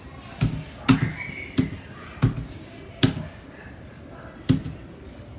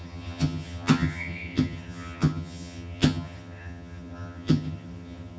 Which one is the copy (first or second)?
second